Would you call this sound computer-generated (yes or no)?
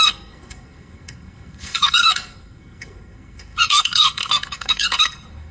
yes